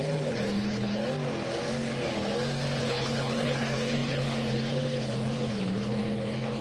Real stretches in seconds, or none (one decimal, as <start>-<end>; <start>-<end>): 1.0-2.8